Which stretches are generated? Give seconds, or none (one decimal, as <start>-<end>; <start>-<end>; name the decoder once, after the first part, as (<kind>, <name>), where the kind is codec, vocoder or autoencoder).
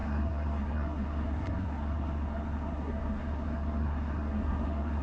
0.0-5.0 (codec, SNAC)